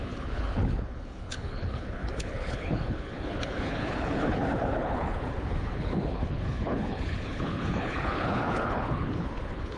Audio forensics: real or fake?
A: fake